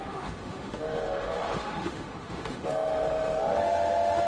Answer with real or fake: fake